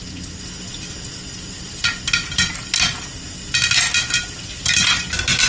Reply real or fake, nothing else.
real